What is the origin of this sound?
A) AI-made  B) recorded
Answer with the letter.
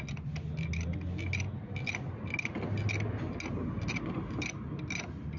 B